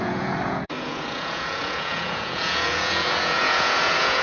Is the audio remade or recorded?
remade